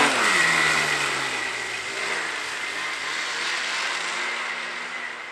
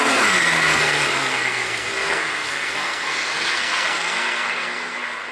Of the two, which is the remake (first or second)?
second